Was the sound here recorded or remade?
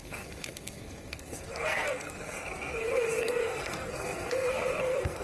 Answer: remade